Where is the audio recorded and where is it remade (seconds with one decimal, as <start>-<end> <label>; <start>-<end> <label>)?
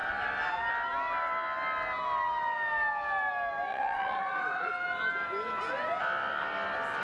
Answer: 0.0-3.7 recorded; 3.7-4.7 remade; 4.7-7.0 recorded